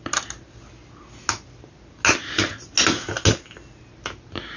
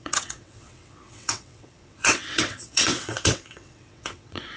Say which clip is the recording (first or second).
first